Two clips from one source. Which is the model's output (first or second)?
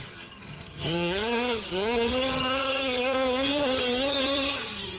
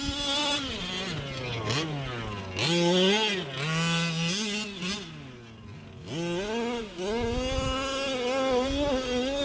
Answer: first